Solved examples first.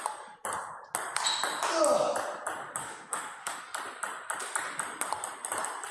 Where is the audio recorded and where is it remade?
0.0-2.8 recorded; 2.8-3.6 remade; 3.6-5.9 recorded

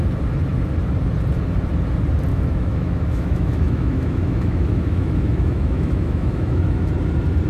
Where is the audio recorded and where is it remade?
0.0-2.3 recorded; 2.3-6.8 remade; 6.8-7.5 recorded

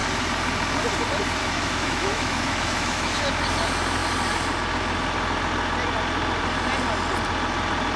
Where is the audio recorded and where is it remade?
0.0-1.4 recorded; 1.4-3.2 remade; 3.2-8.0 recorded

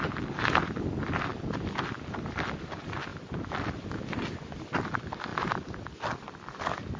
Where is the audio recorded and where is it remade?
0.0-7.0 recorded

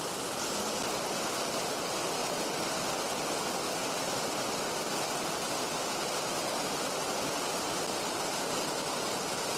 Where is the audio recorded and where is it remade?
0.0-9.6 recorded

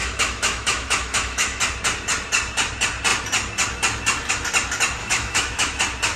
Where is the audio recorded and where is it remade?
0.0-1.6 remade; 1.6-5.0 recorded; 5.0-5.8 remade; 5.8-6.2 recorded

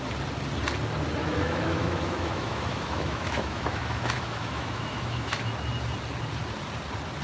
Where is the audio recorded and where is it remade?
0.0-1.2 recorded; 1.2-5.5 remade; 5.5-7.2 recorded

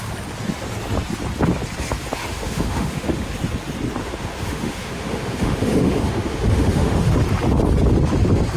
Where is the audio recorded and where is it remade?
0.0-2.2 recorded; 2.2-3.3 remade; 3.3-4.0 recorded; 4.0-7.1 remade; 7.1-8.6 recorded